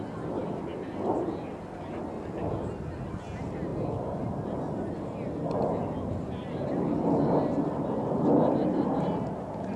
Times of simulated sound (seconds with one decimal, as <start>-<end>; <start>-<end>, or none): none